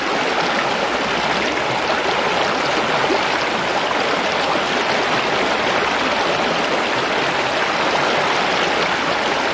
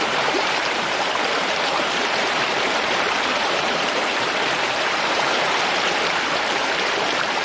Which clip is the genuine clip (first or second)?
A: first